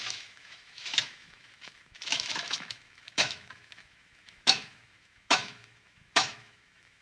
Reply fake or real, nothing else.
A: fake